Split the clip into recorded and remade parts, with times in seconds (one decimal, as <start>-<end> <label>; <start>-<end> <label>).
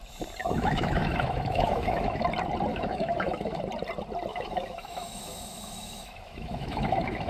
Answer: 0.0-0.4 recorded; 0.4-2.2 remade; 2.2-2.7 recorded; 2.7-3.6 remade; 3.6-4.3 recorded; 4.3-7.3 remade